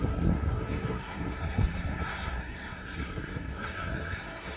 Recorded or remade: remade